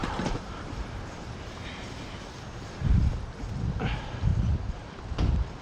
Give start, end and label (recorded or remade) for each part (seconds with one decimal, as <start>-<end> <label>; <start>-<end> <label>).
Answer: 0.0-3.0 remade; 3.0-4.3 recorded; 4.3-5.0 remade; 5.0-5.6 recorded